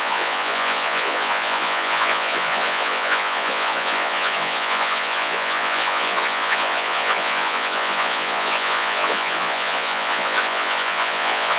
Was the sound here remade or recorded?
remade